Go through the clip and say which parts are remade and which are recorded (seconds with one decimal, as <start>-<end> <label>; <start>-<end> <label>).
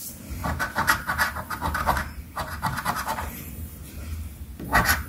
0.0-0.4 recorded; 0.4-3.5 remade; 3.5-5.1 recorded